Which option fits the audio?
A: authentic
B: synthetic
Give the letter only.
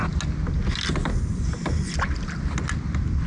A